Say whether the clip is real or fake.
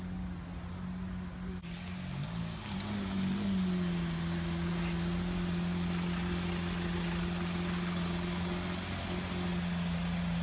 real